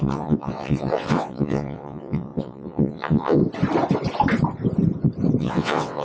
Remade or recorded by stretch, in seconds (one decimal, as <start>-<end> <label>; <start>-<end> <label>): 0.0-3.4 remade; 3.4-5.4 recorded; 5.4-6.0 remade